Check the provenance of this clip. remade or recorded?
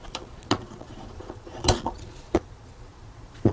remade